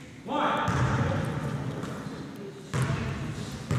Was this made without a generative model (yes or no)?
yes